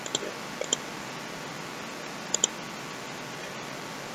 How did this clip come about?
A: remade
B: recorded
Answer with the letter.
B